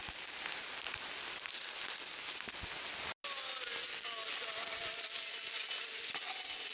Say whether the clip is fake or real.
real